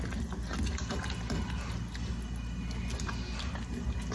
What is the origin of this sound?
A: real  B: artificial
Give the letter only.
A